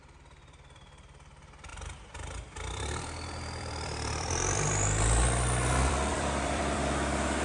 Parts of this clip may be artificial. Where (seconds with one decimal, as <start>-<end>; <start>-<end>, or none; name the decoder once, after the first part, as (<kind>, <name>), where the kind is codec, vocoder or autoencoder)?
0.0-7.4 (vocoder, BigVGAN v2)